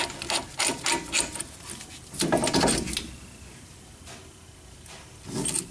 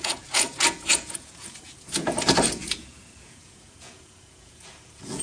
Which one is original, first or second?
first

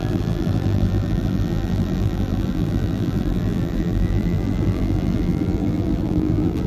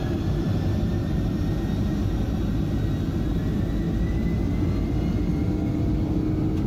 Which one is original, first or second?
second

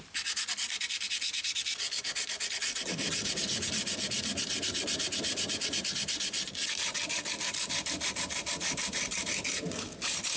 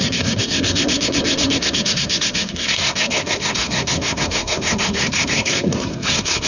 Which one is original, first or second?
first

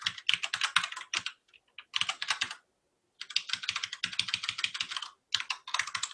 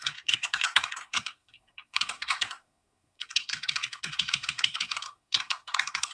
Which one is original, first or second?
first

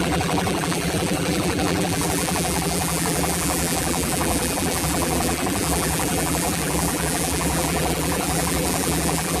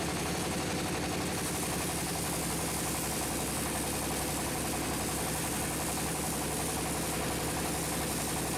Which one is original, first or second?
second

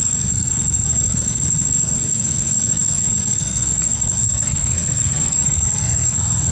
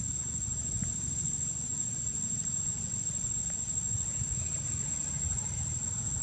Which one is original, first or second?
second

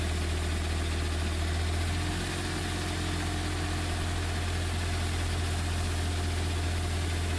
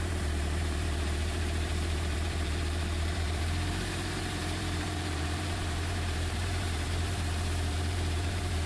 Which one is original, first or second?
first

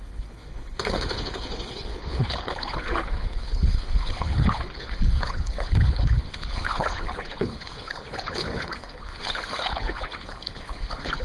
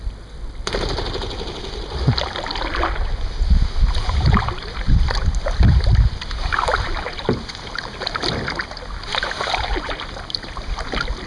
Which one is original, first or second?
second